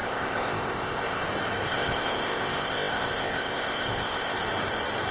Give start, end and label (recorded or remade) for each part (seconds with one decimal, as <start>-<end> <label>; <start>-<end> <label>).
0.0-1.2 remade; 1.2-1.7 recorded; 1.7-4.4 remade; 4.4-5.1 recorded